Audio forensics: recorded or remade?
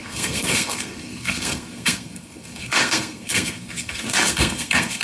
remade